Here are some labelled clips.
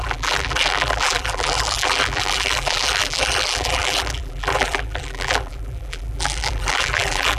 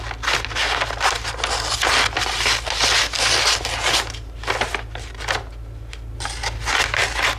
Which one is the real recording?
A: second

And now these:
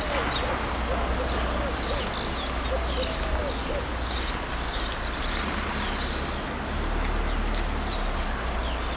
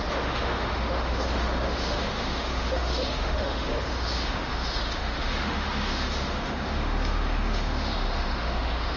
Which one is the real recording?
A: first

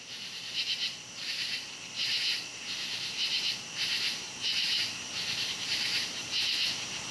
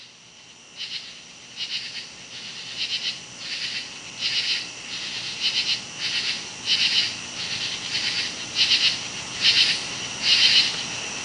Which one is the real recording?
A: second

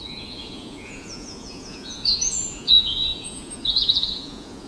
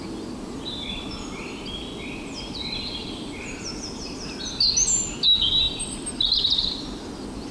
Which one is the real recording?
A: second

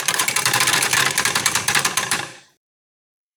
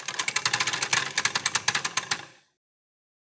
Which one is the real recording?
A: second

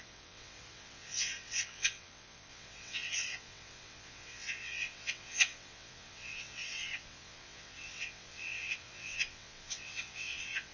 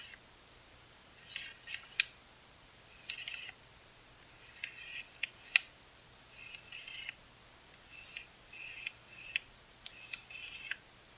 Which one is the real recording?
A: second